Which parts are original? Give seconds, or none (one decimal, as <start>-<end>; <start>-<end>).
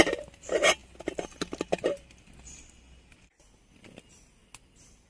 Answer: 0.0-5.1